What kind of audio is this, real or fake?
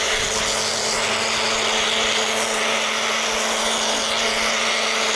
real